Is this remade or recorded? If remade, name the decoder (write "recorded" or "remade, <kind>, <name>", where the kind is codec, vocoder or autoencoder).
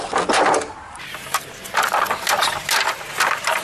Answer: remade, vocoder, BigVGAN v2